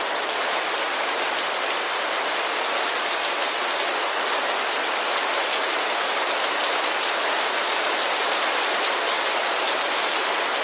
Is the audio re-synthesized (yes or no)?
no